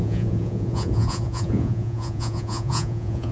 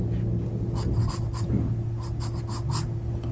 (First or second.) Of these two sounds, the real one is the second